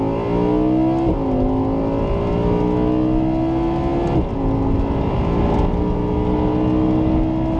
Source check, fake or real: real